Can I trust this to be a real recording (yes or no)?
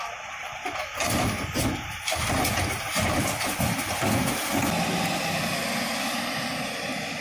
yes